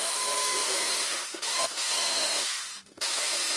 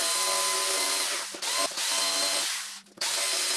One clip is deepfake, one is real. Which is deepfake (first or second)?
first